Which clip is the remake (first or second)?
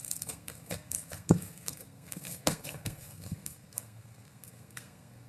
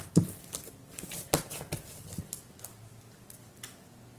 first